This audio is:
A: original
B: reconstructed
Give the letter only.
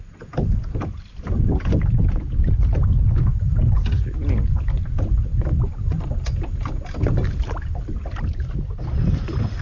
A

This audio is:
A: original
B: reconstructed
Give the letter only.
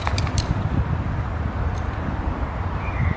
B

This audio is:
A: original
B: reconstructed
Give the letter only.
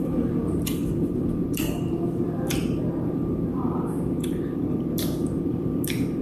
B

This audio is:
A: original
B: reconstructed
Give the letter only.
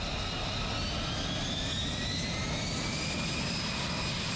A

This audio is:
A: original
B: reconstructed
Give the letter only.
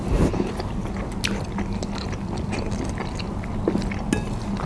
A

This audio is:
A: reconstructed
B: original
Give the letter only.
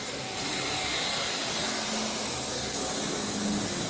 B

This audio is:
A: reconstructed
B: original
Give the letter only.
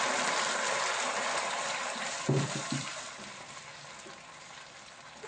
A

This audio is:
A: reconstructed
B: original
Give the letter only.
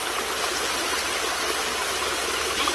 B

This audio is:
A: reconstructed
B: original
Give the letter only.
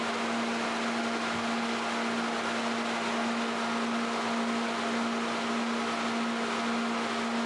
B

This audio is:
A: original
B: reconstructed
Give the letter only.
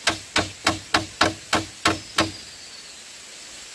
A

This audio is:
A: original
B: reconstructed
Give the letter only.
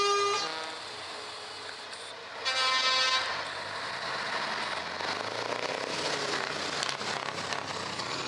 A